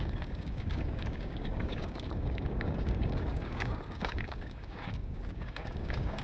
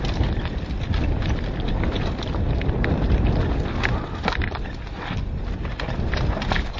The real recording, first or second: second